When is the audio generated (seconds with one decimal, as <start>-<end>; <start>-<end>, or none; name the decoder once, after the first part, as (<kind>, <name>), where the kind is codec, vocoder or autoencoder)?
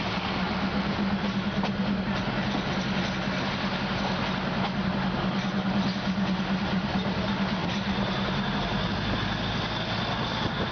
7.6-8.5 (vocoder, BigVGAN v2)